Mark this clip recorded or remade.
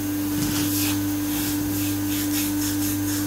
recorded